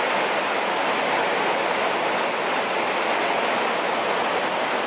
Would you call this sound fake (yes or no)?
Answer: no